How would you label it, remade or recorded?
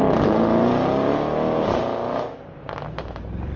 recorded